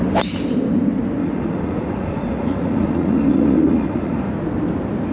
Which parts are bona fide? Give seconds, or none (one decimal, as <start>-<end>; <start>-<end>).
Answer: 0.0-1.2; 4.3-5.1